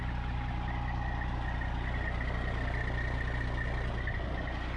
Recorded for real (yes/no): yes